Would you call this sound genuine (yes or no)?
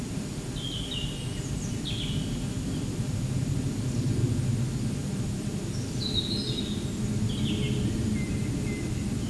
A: yes